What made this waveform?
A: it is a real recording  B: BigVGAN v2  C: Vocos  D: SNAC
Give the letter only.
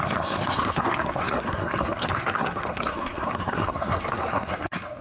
D